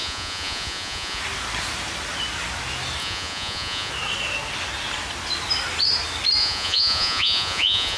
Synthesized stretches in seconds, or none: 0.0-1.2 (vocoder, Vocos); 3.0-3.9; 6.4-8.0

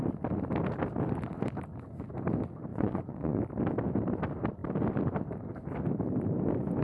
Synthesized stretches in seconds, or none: 2.7-3.4 (vocoder, Vocos)